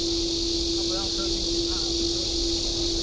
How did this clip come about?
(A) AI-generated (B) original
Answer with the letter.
B